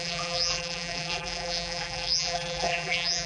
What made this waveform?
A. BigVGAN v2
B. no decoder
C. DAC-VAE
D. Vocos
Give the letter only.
A